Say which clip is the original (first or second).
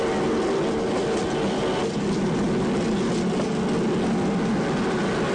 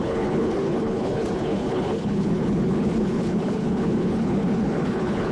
first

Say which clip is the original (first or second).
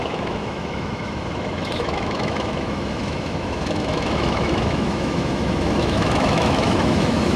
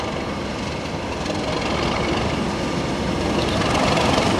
second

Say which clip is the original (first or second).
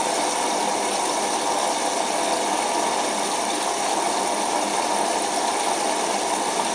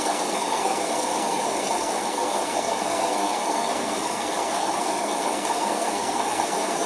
first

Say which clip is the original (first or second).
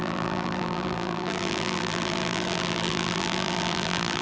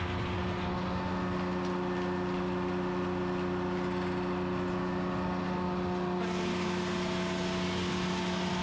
second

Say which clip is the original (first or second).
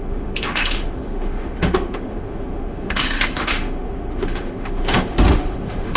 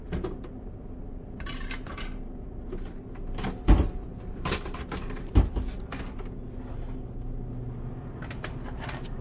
second